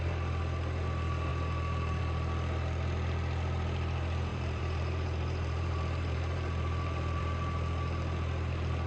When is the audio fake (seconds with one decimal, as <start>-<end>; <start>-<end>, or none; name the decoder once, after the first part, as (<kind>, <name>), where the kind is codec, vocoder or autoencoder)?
4.3-7.2 (vocoder, BigVGAN v2)